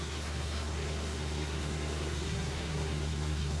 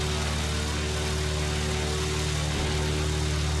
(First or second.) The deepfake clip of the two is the first